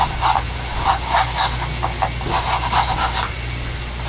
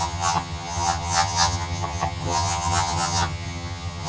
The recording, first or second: first